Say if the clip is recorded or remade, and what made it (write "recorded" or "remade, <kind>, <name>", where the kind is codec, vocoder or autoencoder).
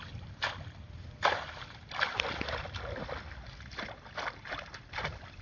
recorded